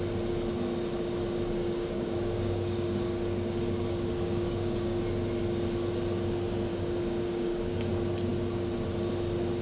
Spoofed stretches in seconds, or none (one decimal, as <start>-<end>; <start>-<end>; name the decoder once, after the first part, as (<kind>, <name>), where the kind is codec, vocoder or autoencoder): 1.6-5.0 (codec, DAC); 6.7-7.9